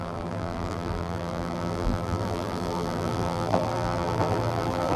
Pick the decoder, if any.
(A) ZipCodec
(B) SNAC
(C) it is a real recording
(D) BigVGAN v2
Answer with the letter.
D